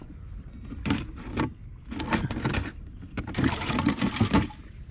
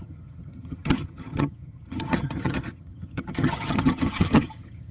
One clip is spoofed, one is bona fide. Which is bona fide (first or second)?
first